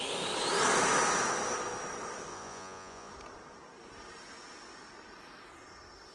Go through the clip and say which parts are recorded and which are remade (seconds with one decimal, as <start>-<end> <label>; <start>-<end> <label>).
0.0-2.3 recorded; 2.3-3.1 remade; 3.1-6.1 recorded